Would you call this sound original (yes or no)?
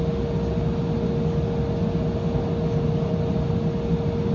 yes